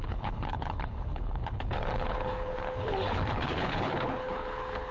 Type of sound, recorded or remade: remade